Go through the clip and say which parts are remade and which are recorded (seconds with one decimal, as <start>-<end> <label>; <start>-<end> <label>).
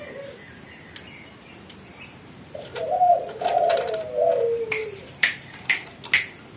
0.0-1.9 recorded; 1.9-2.9 remade; 2.9-4.8 recorded; 4.8-6.0 remade; 6.0-6.6 recorded